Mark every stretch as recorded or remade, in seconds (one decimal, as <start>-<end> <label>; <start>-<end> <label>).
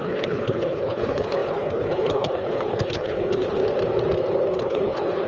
0.0-3.6 remade; 3.6-4.5 recorded; 4.5-5.3 remade